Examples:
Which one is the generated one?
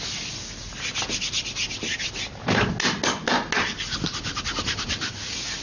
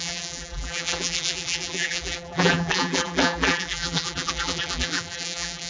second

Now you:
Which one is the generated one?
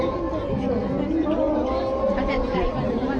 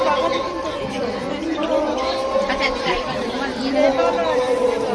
second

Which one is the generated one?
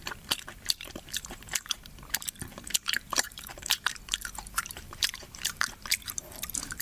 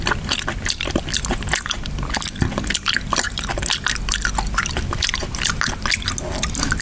first